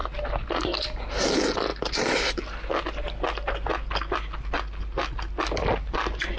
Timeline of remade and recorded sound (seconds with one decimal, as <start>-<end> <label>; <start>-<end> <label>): 0.0-6.4 recorded